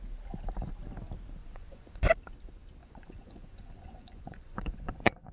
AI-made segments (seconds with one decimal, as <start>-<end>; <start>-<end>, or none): 1.4-2.0; 2.8-5.3